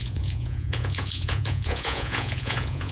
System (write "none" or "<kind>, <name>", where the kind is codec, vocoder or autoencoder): vocoder, Vocos